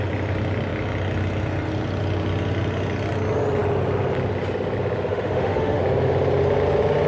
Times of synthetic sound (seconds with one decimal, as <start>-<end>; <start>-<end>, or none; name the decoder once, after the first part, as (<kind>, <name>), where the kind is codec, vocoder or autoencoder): 5.1-5.8 (autoencoder, DAC-VAE)